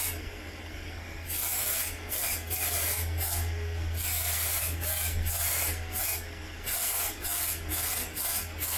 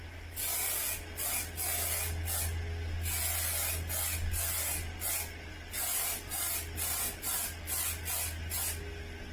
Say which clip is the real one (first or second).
second